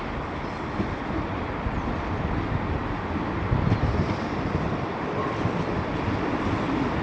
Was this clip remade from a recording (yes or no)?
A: no